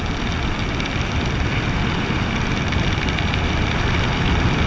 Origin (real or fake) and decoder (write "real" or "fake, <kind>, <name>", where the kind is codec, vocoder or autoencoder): real